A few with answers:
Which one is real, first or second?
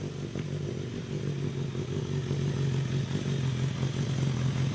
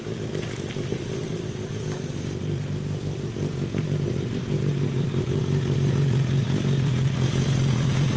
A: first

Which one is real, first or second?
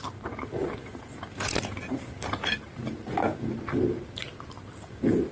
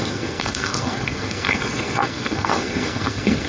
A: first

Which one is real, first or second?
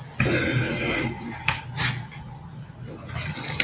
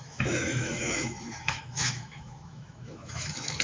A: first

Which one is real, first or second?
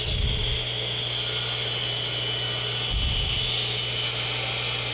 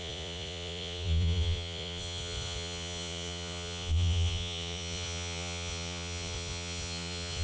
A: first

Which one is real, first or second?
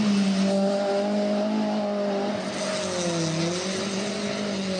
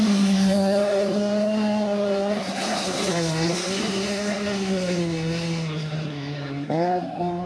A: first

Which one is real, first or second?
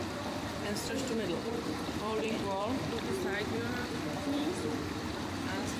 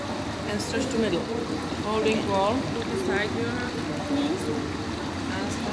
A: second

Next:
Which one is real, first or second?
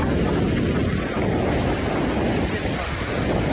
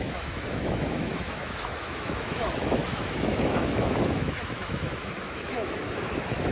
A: first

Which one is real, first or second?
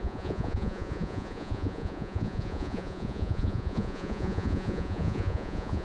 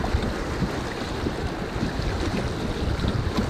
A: second